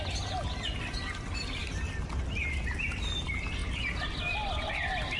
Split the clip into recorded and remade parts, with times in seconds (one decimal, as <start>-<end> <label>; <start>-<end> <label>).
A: 0.0-5.2 recorded